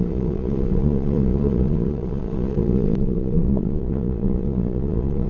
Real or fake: fake